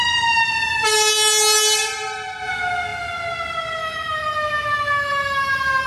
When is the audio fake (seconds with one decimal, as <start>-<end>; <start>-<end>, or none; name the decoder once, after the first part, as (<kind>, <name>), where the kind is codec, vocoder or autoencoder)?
3.8-5.9 (autoencoder, DAC-VAE)

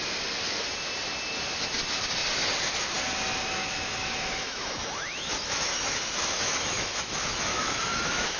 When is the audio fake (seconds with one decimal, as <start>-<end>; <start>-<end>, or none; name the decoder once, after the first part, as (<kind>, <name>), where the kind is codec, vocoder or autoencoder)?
3.6-8.4 (autoencoder, DAC-VAE)

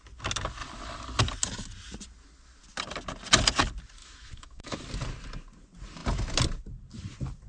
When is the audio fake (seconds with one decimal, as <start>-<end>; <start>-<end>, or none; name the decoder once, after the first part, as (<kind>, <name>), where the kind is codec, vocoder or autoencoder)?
4.0-4.8 (autoencoder, DAC-VAE)